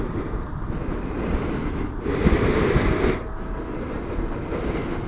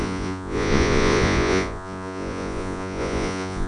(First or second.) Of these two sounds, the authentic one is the first